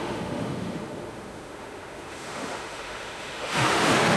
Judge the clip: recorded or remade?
remade